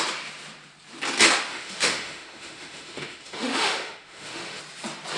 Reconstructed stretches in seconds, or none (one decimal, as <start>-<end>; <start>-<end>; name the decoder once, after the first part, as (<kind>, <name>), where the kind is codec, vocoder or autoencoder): 1.5-4.6 (autoencoder, DAC-VAE)